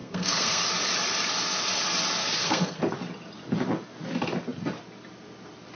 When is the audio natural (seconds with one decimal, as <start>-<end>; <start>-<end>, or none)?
0.6-2.2; 2.8-5.7